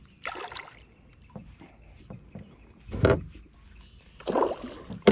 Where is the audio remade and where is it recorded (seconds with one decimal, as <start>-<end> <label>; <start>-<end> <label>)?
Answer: 0.0-5.1 recorded